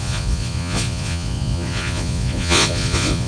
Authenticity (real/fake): fake